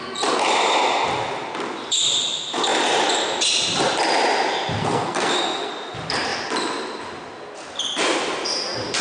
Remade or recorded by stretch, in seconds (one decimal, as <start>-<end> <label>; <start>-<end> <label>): 0.0-4.8 recorded; 4.8-5.7 remade; 5.7-9.0 recorded